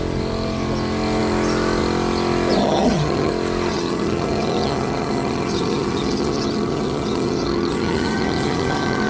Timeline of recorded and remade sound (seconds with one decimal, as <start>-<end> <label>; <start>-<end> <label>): 0.0-2.6 recorded; 2.6-3.3 remade; 3.3-3.7 recorded; 3.7-9.1 remade